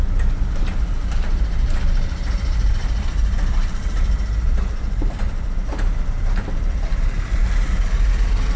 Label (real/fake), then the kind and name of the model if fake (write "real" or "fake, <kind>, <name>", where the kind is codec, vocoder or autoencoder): fake, vocoder, BigVGAN v2